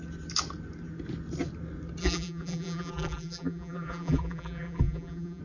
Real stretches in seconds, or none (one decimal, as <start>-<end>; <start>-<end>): 0.0-2.0